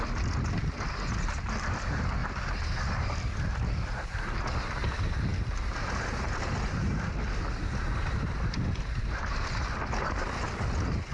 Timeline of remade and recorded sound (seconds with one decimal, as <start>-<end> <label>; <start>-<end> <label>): 0.0-11.1 recorded